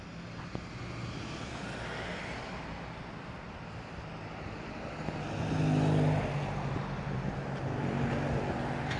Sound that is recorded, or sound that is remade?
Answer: recorded